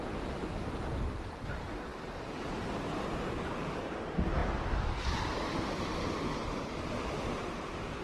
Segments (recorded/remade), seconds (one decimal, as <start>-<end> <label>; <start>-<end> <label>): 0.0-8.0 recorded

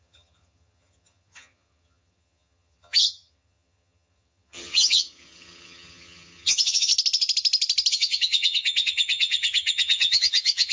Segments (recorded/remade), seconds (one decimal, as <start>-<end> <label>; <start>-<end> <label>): 0.0-6.9 remade; 6.9-7.9 recorded; 7.9-10.7 remade

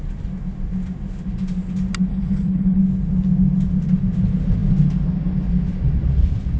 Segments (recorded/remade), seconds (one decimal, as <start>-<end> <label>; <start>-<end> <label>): 0.0-2.1 recorded; 2.1-2.8 remade; 2.8-6.6 recorded

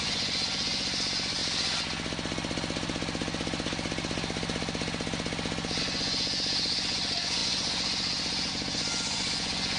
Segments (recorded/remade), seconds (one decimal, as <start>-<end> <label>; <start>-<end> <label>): 0.0-1.4 remade; 1.4-5.8 recorded; 5.8-9.8 remade